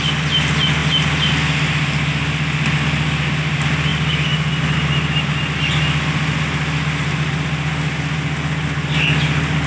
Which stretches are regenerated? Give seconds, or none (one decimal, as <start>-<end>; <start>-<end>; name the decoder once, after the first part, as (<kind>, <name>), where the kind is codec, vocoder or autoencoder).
none